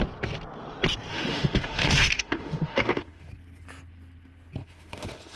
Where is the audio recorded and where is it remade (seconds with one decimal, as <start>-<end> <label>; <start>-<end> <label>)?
0.0-1.1 recorded; 1.1-3.3 remade; 3.3-4.6 recorded; 4.6-5.4 remade